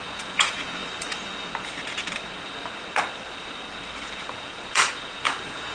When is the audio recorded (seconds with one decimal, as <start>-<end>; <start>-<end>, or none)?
0.8-4.2